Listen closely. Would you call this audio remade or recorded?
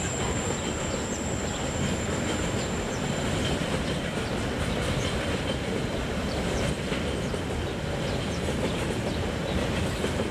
recorded